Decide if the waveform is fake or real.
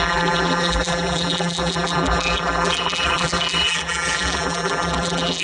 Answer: fake